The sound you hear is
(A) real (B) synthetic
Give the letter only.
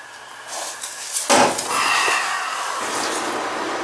A